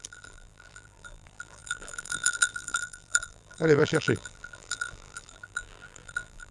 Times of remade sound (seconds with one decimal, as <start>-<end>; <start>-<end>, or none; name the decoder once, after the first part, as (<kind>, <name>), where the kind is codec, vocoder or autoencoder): 0.0-6.5 (vocoder, BigVGAN v2)